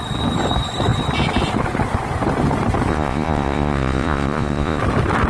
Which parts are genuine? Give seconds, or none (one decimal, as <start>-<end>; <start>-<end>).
0.0-2.9; 4.8-5.3